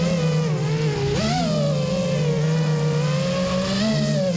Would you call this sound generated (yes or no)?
no